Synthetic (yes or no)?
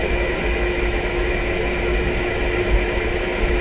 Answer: yes